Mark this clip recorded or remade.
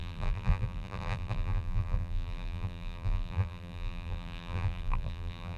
remade